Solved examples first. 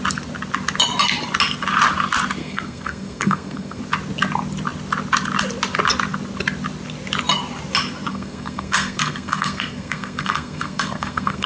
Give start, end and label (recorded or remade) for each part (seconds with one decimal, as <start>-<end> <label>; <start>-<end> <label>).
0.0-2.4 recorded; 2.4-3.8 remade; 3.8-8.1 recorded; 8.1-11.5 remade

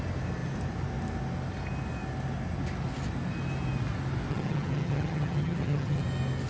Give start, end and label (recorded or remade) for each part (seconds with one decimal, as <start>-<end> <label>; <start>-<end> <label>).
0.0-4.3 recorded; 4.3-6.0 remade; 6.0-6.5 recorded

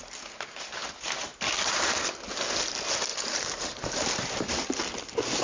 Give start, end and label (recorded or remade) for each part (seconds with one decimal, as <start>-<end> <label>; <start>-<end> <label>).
0.0-1.3 recorded; 1.3-1.9 remade; 1.9-3.1 recorded; 3.1-4.5 remade; 4.5-5.4 recorded

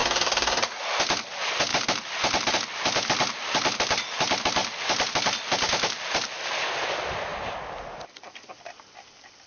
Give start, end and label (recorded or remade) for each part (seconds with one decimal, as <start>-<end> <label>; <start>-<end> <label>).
0.0-0.8 remade; 0.8-9.5 recorded

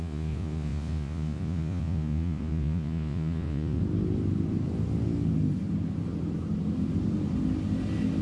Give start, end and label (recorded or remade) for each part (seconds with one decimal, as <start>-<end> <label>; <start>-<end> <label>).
0.0-3.8 remade; 3.8-8.2 recorded

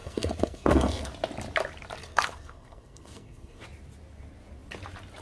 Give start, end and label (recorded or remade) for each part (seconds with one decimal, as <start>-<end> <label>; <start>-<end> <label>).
0.0-1.1 remade; 1.1-2.0 recorded; 2.0-3.6 remade; 3.6-5.2 recorded

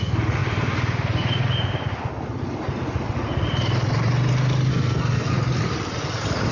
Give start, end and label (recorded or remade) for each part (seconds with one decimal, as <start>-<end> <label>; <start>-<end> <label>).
0.0-4.7 recorded; 4.7-5.3 remade; 5.3-6.5 recorded

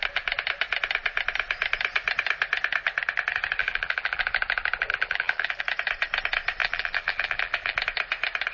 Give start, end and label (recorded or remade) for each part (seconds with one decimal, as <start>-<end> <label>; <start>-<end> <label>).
0.0-3.6 recorded; 3.6-4.2 remade; 4.2-4.9 recorded; 4.9-5.6 remade; 5.6-6.6 recorded; 6.6-7.8 remade; 7.8-8.5 recorded